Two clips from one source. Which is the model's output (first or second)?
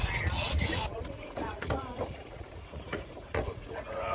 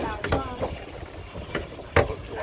first